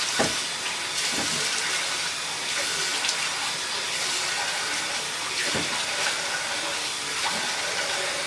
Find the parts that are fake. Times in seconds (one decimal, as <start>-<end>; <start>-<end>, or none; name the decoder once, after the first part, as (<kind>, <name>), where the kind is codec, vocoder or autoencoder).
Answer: 2.9-7.9 (vocoder, BigVGAN v2)